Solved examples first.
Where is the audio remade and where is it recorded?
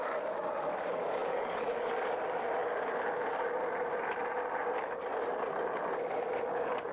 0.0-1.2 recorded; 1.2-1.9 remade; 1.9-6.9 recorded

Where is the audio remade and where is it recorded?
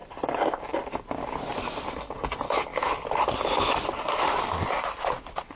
0.0-5.6 recorded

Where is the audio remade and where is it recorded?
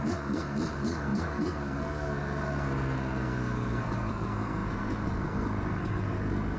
0.0-6.6 remade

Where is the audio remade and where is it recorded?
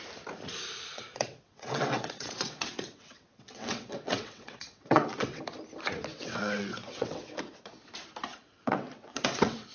0.0-0.9 recorded; 0.9-5.4 remade; 5.4-6.1 recorded; 6.1-7.7 remade; 7.7-8.3 recorded; 8.3-9.7 remade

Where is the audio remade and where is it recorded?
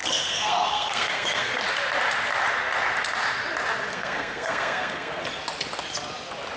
0.0-1.5 remade; 1.5-3.9 recorded; 3.9-5.2 remade; 5.2-6.6 recorded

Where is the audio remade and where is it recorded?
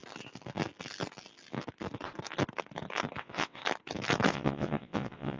0.0-3.2 recorded; 3.2-3.6 remade; 3.6-4.3 recorded; 4.3-5.4 remade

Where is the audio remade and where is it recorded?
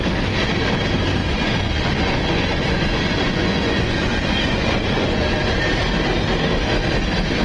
0.0-1.2 recorded; 1.2-5.6 remade; 5.6-7.4 recorded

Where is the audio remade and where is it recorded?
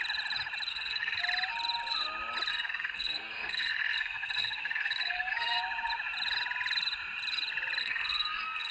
0.0-0.7 recorded; 0.7-1.2 remade; 1.2-2.5 recorded; 2.5-5.6 remade; 5.6-7.8 recorded; 7.8-8.7 remade